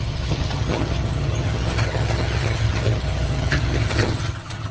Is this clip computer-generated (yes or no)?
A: yes